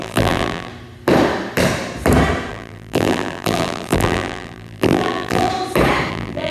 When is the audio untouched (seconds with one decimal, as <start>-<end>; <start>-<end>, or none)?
0.7-2.5; 5.5-6.1